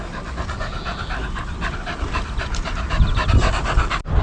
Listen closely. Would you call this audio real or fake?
real